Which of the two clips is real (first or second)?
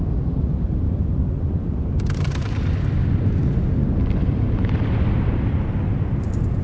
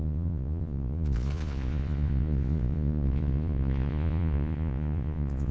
first